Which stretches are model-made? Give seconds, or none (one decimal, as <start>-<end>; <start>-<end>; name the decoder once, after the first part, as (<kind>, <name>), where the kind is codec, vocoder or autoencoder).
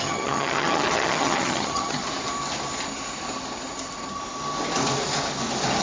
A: 0.0-2.0 (vocoder, HiFi-GAN)